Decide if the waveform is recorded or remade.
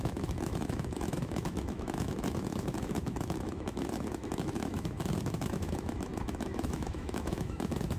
remade